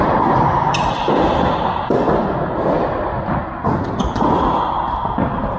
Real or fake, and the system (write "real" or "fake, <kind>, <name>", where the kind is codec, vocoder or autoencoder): real